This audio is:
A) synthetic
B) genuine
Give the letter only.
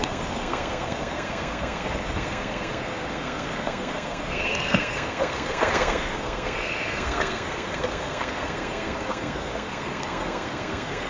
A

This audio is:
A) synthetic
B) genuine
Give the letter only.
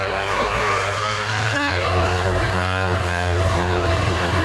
A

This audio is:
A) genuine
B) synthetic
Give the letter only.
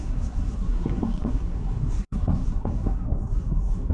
B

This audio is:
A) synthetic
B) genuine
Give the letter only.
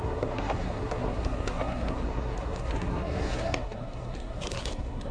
A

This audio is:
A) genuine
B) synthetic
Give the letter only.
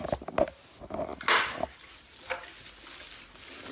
A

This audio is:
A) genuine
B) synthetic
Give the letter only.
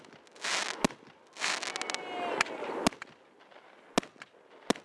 A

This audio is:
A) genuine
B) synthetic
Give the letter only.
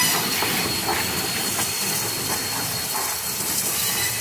A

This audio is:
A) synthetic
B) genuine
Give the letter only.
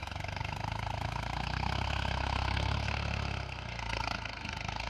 A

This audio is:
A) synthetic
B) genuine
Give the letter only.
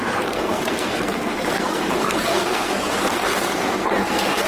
A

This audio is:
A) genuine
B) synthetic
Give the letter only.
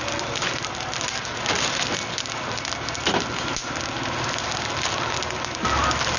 A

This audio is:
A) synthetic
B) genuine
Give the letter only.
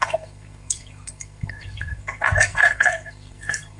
A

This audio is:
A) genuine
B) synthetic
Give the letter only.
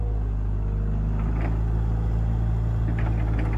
A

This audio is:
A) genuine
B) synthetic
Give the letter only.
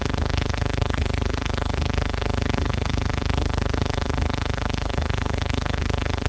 B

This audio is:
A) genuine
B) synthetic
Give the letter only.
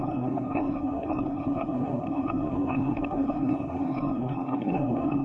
B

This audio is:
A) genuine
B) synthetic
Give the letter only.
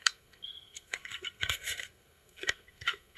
B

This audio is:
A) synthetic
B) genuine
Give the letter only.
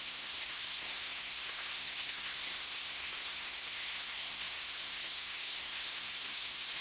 A